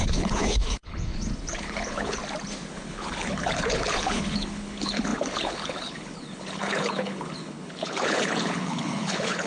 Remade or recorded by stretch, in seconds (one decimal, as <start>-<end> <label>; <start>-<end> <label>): 0.0-2.2 remade; 2.2-2.7 recorded; 2.7-9.5 remade